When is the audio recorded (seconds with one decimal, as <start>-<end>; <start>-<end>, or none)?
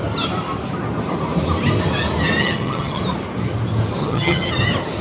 0.0-2.4; 3.0-4.0; 4.5-5.0